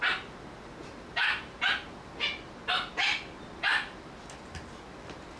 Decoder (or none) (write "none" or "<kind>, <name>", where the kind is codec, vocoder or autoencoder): none